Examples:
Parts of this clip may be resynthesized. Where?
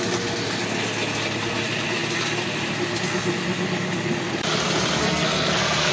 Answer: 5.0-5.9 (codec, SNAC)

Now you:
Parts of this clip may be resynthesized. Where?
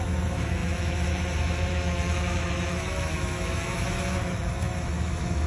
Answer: 0.0-5.5 (autoencoder, DAC-VAE)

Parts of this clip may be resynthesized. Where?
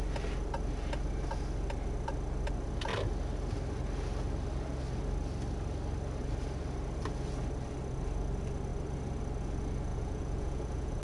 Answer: 9.9-11.0 (vocoder, Vocos)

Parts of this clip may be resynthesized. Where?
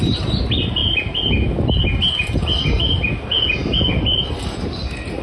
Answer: none